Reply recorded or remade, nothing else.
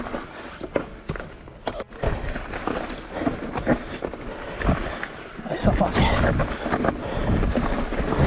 recorded